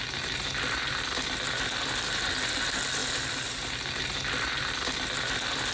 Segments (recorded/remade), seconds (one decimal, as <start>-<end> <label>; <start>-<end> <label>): 0.0-5.7 recorded